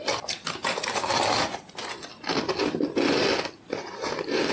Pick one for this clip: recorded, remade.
recorded